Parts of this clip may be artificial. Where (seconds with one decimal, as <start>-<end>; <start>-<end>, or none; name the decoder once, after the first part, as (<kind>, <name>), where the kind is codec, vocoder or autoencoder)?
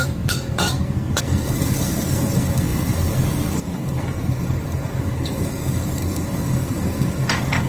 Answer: 0.0-7.7 (codec, SNAC)